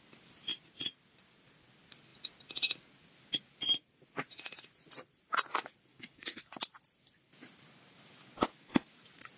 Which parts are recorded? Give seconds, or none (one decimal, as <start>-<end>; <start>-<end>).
0.0-5.9; 6.4-9.4